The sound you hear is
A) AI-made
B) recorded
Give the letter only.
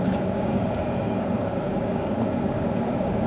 A